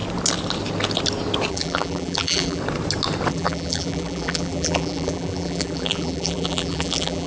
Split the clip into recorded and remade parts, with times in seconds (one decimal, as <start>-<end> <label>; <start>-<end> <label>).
0.0-1.5 recorded; 1.5-2.6 remade; 2.6-3.3 recorded; 3.3-7.3 remade